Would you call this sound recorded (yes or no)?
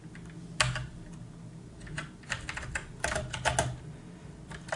yes